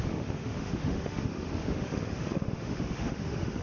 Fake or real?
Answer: fake